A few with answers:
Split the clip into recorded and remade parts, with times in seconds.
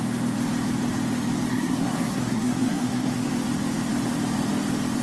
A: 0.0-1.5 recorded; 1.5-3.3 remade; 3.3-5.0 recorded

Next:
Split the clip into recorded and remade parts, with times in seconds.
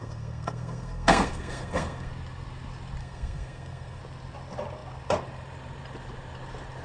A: 0.0-2.1 remade; 2.1-3.0 recorded; 3.0-4.0 remade; 4.0-6.8 recorded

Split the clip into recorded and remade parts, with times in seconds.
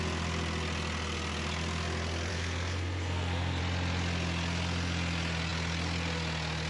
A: 0.0-2.3 recorded; 2.3-3.6 remade; 3.6-6.7 recorded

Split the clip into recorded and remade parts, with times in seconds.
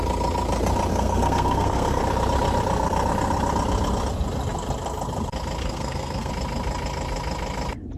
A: 0.0-0.9 recorded; 0.9-2.0 remade; 2.0-5.6 recorded; 5.6-6.3 remade; 6.3-8.0 recorded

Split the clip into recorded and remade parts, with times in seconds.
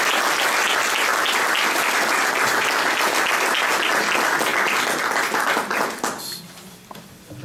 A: 0.0-7.4 recorded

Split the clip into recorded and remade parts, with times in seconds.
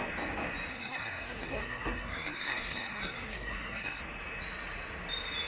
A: 0.0-0.7 recorded; 0.7-4.0 remade; 4.0-5.5 recorded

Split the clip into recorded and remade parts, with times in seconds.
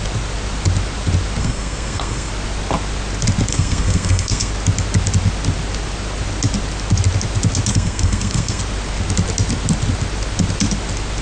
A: 0.0-1.4 recorded; 1.4-2.3 remade; 2.3-3.5 recorded; 3.5-4.5 remade; 4.5-7.7 recorded; 7.7-8.6 remade; 8.6-11.2 recorded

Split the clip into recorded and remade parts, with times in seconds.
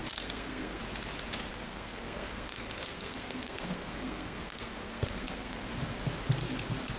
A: 0.0-0.8 remade; 0.8-1.5 recorded; 1.5-5.7 remade; 5.7-7.0 recorded